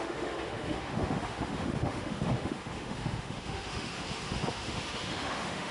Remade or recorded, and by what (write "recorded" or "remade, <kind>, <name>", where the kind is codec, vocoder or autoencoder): remade, autoencoder, DAC-VAE